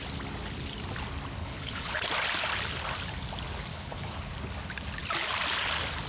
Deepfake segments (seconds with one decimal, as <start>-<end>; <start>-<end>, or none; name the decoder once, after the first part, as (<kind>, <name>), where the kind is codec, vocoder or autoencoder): 1.4-2.0 (codec, HILCodec); 3.7-4.3